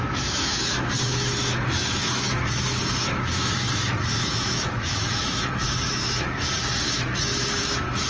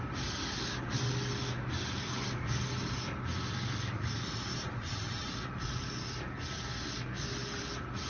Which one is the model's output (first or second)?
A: first